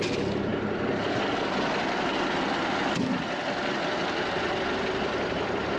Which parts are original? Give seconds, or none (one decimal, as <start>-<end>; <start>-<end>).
0.0-5.8